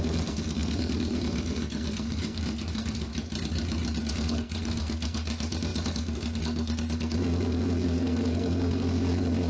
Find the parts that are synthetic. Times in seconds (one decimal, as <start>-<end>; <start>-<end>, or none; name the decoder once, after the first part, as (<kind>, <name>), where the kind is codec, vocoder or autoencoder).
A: 0.0-3.1 (codec, SNAC); 4.0-9.5